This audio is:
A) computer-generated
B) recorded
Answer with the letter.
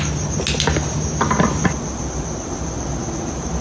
B